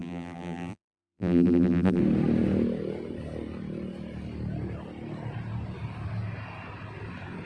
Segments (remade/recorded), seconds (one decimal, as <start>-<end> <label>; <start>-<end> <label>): 0.0-2.0 remade; 2.0-7.5 recorded